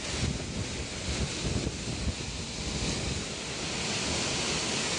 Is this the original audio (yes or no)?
yes